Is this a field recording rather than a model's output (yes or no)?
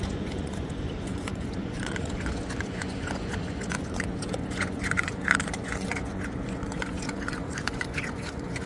no